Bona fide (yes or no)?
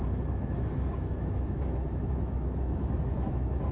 no